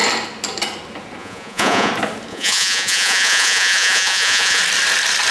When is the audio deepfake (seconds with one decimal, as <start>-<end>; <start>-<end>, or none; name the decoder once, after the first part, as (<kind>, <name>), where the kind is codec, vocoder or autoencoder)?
1.2-1.9 (vocoder, Vocos); 2.3-4.6